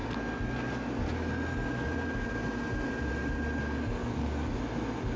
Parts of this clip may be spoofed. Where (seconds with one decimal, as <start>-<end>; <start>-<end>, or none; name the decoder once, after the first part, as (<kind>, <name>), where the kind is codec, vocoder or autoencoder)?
4.0-4.6 (codec, DAC)